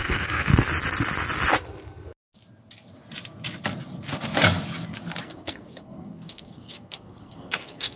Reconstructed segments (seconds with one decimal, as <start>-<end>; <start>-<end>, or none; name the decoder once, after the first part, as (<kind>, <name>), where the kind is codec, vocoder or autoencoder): 0.0-0.5 (codec, SNAC); 5.2-8.0